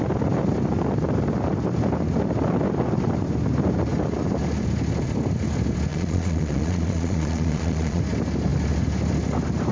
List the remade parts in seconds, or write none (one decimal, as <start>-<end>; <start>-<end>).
5.9-8.0